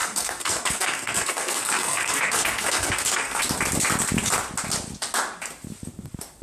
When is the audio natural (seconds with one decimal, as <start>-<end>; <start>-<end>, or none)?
3.4-6.4